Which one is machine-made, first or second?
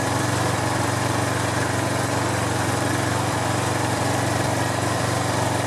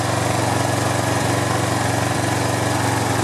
first